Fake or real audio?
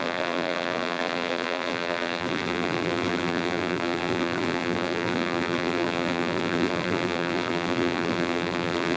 fake